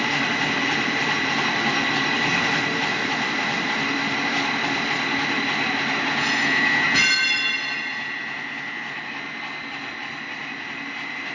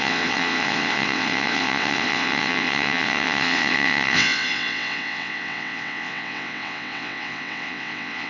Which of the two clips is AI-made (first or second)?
second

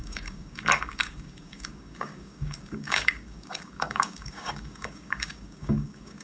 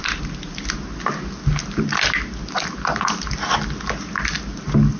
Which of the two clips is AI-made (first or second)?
first